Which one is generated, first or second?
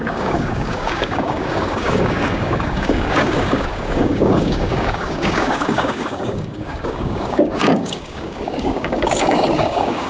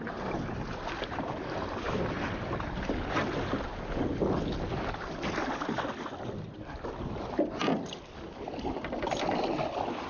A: first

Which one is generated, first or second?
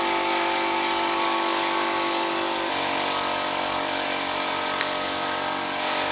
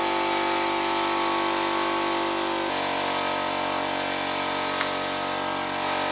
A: first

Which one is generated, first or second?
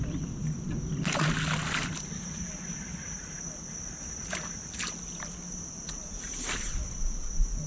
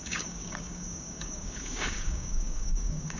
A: second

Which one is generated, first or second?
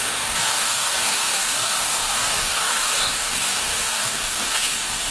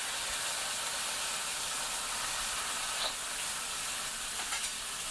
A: first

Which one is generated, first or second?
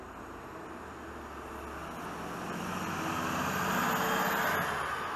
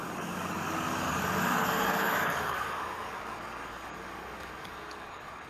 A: second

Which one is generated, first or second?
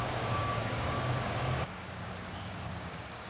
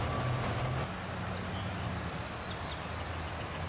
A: first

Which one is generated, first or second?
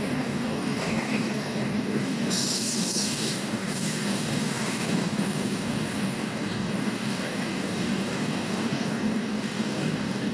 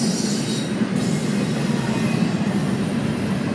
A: first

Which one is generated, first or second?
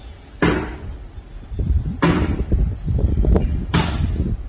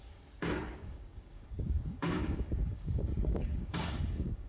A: second